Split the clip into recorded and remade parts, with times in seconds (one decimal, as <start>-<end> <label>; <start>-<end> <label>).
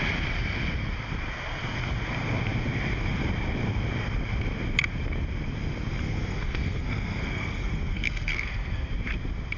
0.0-6.0 recorded; 6.0-8.9 remade; 8.9-9.6 recorded